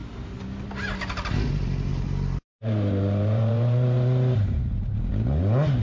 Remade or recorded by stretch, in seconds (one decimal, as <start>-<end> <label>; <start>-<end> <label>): 0.0-1.9 recorded; 1.9-5.1 remade; 5.1-5.8 recorded